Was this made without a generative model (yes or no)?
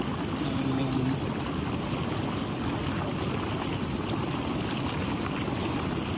yes